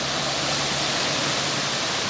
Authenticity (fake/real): real